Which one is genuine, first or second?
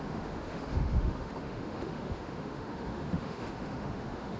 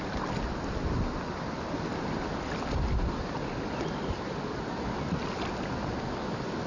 second